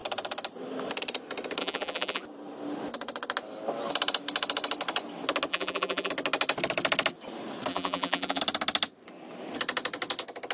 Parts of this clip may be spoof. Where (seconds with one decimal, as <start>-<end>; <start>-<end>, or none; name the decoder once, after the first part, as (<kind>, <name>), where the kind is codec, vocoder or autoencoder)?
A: 1.6-2.2 (vocoder, BigVGAN v2); 5.5-6.1; 7.7-8.4